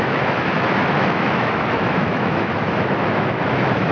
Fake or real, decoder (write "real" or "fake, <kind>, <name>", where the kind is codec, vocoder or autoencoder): fake, autoencoder, DAC-VAE